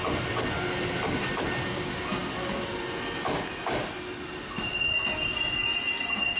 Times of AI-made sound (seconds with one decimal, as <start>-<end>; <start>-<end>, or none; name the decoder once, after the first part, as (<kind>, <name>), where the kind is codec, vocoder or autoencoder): none